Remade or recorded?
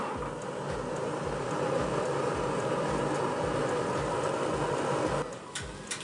recorded